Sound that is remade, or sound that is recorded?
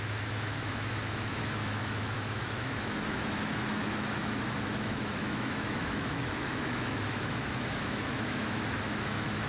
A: remade